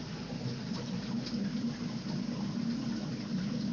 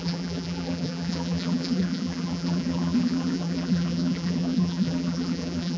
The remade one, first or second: second